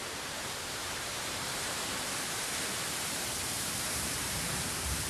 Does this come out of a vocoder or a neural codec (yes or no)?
yes